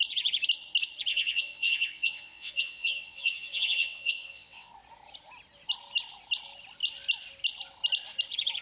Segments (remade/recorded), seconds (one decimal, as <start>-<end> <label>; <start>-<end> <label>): 0.0-1.1 recorded; 1.1-4.7 remade; 4.7-8.6 recorded